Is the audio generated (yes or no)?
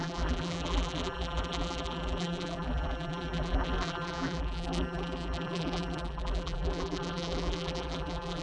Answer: yes